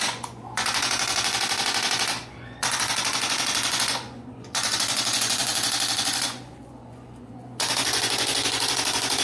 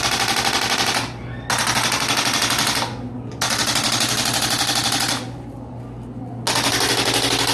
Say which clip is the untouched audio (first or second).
second